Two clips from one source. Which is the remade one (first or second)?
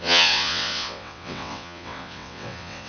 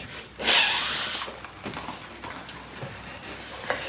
first